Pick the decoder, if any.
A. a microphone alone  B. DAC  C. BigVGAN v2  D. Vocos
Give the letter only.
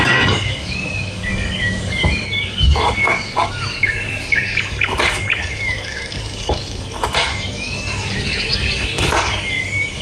B